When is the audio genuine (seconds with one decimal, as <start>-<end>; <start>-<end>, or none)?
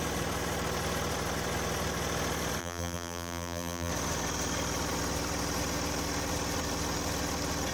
0.0-2.6; 3.9-7.7